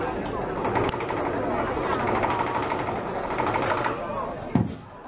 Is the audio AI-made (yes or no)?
no